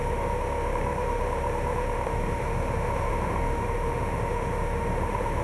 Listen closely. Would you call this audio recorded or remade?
remade